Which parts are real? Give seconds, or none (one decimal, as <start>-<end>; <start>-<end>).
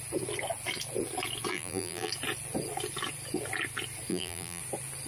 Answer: 0.0-1.5; 2.1-4.1; 4.6-5.1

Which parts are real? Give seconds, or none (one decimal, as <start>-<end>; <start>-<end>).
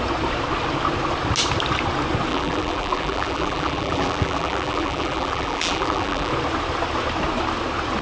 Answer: 0.0-2.3; 6.3-8.0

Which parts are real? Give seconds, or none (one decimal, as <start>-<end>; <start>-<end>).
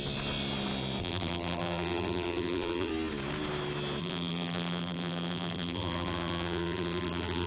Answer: 0.0-1.0; 2.9-4.0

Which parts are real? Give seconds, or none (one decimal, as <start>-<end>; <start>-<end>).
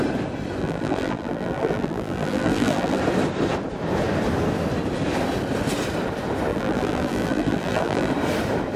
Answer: 0.0-0.6; 3.0-6.5; 8.1-8.8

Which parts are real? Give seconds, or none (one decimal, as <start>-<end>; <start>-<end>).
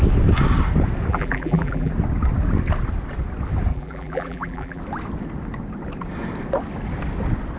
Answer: 0.0-1.1; 1.9-3.7; 4.8-7.6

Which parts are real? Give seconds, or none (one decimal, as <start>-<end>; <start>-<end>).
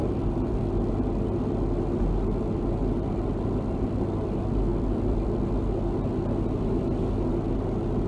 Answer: 0.9-4.7; 5.5-8.1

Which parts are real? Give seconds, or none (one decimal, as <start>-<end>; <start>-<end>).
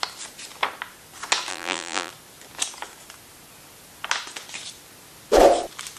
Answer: 0.0-1.5; 2.1-6.0